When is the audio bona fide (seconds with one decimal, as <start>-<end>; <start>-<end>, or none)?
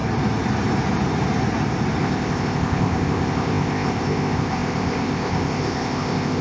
0.0-2.0